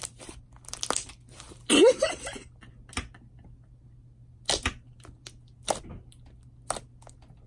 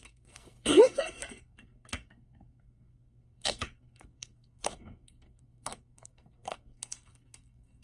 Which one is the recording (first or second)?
first